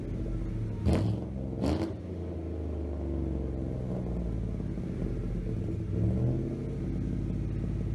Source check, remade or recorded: recorded